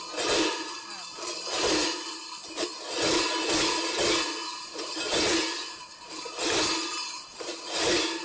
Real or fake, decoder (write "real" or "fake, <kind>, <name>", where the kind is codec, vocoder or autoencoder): real